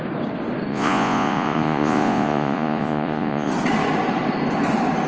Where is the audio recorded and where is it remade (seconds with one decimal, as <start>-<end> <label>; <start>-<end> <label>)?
0.0-0.7 recorded; 0.7-3.5 remade; 3.5-5.1 recorded